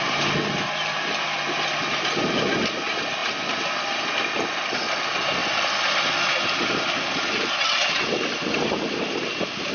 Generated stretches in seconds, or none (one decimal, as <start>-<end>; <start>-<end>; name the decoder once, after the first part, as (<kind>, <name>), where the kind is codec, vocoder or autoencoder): none